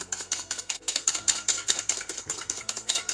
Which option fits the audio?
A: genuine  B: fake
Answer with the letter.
B